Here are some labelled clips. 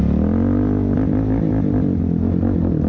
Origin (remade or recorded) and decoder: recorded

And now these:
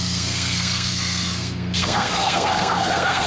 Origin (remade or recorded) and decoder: remade, codec, SNAC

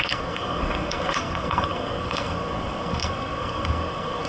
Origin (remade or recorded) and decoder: remade, codec, SNAC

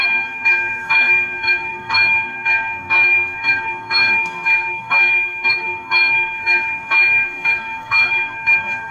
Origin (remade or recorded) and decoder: remade, codec, SNAC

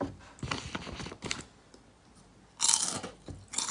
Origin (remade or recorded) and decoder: recorded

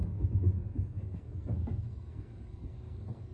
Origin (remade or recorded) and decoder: remade, codec, SNAC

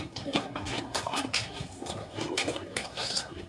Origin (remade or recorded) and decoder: remade, codec, SNAC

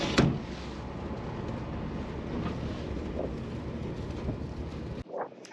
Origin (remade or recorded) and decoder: recorded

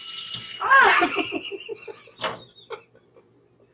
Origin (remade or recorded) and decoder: recorded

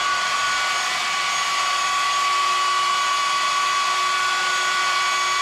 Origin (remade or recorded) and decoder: recorded